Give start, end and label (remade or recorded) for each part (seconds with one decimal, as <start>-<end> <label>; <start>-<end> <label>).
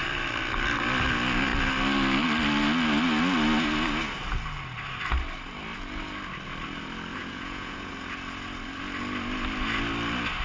0.0-7.2 recorded; 7.2-7.9 remade; 7.9-10.4 recorded